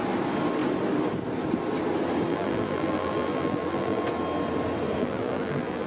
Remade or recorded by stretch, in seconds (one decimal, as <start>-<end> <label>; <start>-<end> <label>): 0.0-2.3 recorded; 2.3-4.0 remade; 4.0-5.0 recorded; 5.0-5.9 remade